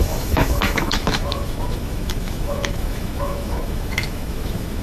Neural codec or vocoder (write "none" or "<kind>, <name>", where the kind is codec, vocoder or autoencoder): autoencoder, DAC-VAE